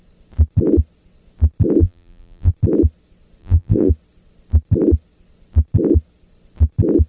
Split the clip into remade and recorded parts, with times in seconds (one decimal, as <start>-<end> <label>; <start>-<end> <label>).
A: 0.0-1.8 recorded; 1.8-2.5 remade; 2.5-3.4 recorded; 3.4-3.9 remade; 3.9-7.1 recorded